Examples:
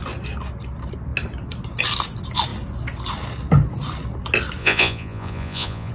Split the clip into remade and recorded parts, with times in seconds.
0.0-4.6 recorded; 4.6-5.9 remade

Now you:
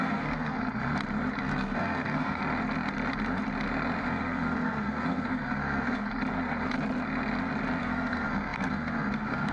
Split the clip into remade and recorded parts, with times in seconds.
0.0-0.6 remade; 0.6-1.4 recorded; 1.4-2.4 remade; 2.4-4.0 recorded; 4.0-6.1 remade; 6.1-7.8 recorded; 7.8-9.5 remade

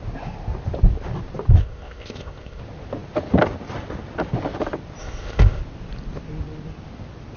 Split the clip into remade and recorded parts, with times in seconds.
0.0-1.6 recorded; 1.6-2.6 remade; 2.6-5.0 recorded; 5.0-5.6 remade; 5.6-7.4 recorded

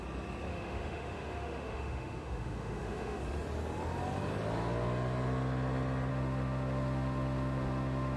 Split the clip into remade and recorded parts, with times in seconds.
0.0-0.5 recorded; 0.5-3.2 remade; 3.2-6.1 recorded; 6.1-8.2 remade

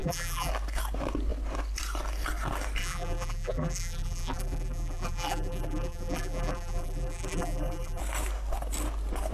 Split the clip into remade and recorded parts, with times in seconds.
0.0-0.5 remade; 0.5-2.8 recorded; 2.8-8.0 remade; 8.0-9.3 recorded

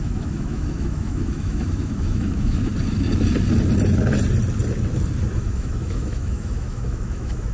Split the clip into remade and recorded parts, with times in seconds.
0.0-2.7 remade; 2.7-5.4 recorded; 5.4-7.5 remade

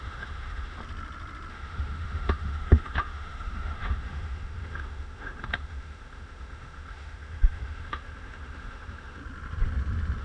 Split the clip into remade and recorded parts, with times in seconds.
0.0-0.8 remade; 0.8-1.5 recorded; 1.5-9.2 remade; 9.2-10.2 recorded